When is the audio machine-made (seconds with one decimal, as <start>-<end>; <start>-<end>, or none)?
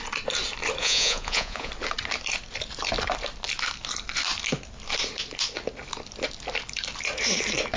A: 0.8-1.7